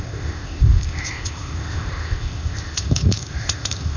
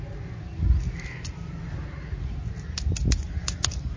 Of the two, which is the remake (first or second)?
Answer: first